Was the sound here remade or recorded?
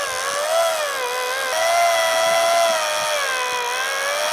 recorded